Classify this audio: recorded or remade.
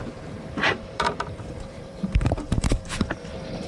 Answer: remade